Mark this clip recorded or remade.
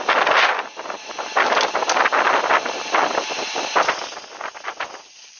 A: recorded